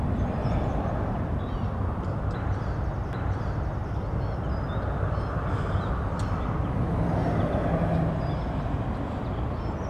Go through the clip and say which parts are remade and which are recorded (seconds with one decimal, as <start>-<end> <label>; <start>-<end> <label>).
0.0-9.9 recorded